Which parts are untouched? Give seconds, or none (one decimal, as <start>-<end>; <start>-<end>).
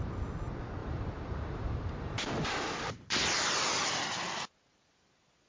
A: 0.0-0.8; 4.1-5.5